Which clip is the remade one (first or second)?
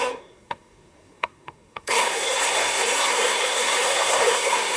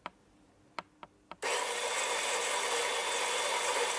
first